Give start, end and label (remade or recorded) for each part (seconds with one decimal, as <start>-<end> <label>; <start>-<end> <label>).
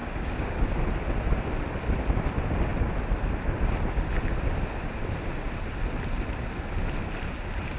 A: 0.0-0.6 remade; 0.6-7.8 recorded